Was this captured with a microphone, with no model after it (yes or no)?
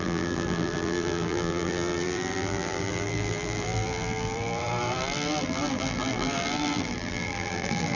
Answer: no